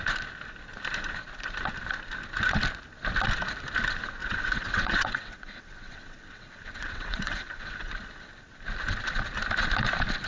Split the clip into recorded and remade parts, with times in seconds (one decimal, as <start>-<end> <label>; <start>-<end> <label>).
0.0-4.2 recorded; 4.2-7.9 remade; 7.9-10.3 recorded